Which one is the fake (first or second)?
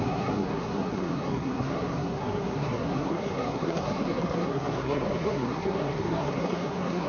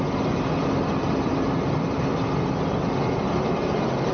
first